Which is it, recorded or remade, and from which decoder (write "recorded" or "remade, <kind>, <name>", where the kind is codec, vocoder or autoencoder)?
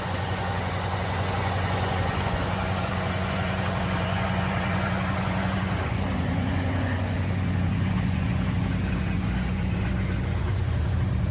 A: remade, vocoder, Vocos